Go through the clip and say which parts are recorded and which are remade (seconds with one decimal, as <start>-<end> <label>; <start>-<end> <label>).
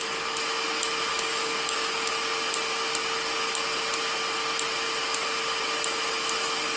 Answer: 0.0-1.1 recorded; 1.1-2.1 remade; 2.1-6.8 recorded